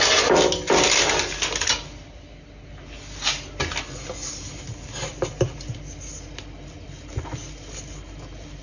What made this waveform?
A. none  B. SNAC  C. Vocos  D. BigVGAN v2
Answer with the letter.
A